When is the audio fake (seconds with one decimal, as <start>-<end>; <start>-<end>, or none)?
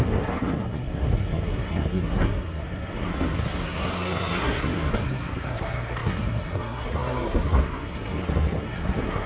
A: 0.0-9.3